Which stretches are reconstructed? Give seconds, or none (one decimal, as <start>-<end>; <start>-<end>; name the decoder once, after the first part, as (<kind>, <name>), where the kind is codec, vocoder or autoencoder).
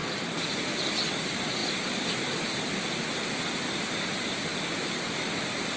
none